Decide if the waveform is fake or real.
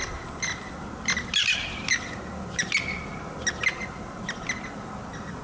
real